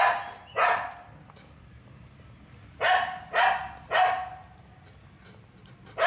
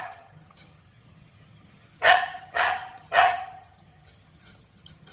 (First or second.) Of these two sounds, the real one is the first